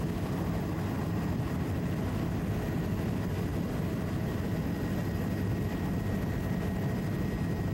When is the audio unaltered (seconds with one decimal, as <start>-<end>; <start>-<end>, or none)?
0.0-7.7